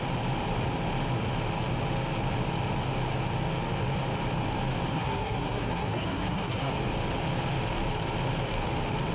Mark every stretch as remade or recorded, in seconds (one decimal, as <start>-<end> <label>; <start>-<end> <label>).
0.0-4.9 recorded; 4.9-6.7 remade; 6.7-9.1 recorded